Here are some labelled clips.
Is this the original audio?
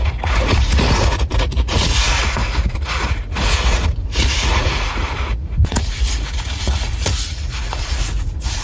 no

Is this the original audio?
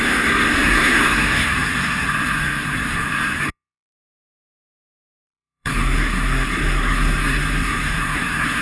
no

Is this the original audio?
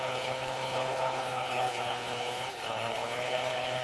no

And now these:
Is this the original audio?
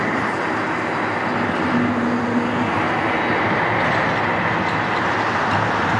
yes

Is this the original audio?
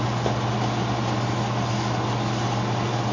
yes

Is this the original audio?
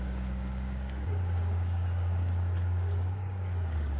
no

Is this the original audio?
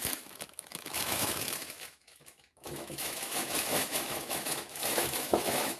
no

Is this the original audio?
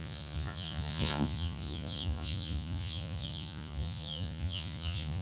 no